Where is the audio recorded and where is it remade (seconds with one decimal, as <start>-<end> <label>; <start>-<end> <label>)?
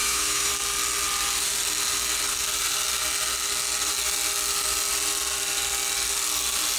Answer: 0.0-0.5 remade; 0.5-6.8 recorded